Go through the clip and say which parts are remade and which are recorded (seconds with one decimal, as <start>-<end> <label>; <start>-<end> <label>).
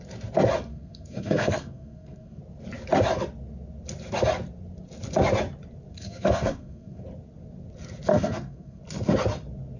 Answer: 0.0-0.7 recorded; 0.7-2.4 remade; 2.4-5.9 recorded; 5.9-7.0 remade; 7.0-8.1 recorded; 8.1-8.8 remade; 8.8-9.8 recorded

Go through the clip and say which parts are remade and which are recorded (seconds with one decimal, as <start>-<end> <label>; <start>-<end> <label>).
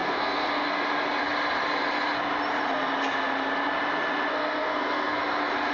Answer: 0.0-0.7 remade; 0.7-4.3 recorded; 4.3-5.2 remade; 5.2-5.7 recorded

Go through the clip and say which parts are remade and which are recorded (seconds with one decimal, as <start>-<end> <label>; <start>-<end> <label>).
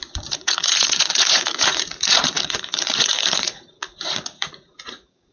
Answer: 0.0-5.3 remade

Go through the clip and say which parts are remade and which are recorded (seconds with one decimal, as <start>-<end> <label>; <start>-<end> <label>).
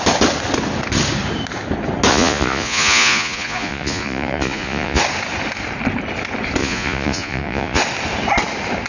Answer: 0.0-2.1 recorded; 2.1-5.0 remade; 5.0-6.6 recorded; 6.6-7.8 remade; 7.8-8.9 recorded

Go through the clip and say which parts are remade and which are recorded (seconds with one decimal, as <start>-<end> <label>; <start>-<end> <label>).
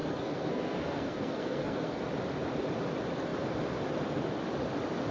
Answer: 0.0-1.9 remade; 1.9-5.1 recorded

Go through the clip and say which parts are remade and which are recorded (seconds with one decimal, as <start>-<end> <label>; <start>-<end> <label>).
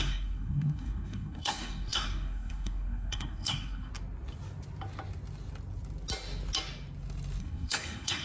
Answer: 0.0-3.9 remade; 3.9-7.4 recorded; 7.4-8.2 remade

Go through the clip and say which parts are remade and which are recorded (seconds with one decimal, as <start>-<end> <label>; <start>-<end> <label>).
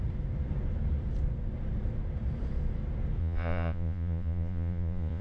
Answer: 0.0-3.2 recorded; 3.2-5.2 remade